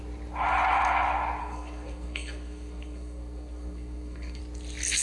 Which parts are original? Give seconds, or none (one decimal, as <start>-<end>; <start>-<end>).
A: 0.0-1.4; 4.4-5.0